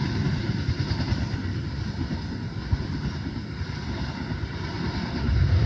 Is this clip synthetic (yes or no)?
no